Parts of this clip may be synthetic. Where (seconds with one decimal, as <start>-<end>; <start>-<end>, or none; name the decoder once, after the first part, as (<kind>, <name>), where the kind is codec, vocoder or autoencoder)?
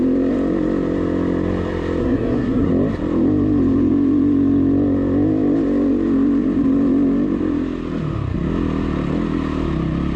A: 2.0-2.7 (codec, SNAC)